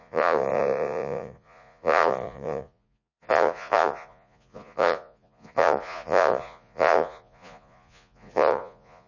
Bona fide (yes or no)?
no